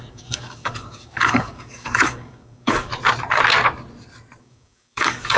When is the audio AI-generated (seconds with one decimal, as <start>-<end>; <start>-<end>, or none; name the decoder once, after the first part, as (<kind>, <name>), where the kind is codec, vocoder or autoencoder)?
0.0-2.9 (codec, DAC); 4.4-5.4